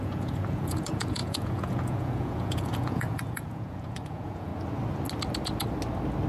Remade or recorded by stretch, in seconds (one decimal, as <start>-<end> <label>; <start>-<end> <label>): 0.0-4.5 remade; 4.5-6.3 recorded